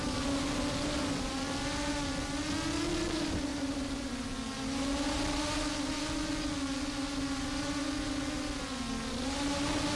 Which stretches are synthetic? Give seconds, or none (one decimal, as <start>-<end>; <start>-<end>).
3.5-4.1